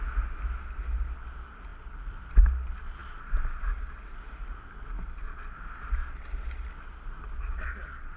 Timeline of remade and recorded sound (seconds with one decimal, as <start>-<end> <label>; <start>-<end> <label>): 0.0-8.2 recorded